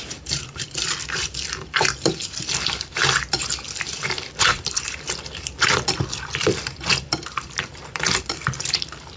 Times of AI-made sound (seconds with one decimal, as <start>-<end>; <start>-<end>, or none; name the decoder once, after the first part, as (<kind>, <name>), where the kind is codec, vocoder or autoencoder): 0.0-3.0 (vocoder, BigVGAN v2); 4.4-9.2